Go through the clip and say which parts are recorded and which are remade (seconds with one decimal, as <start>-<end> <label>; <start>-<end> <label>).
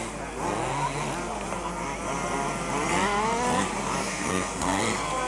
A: 0.0-4.0 recorded; 4.0-4.8 remade; 4.8-5.3 recorded